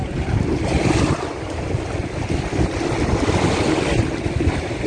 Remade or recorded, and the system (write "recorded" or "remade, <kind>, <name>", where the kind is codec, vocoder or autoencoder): recorded